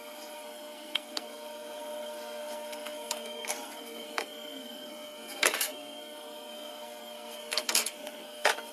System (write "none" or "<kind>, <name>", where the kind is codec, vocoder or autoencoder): codec, SNAC